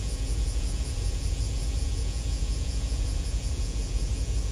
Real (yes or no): no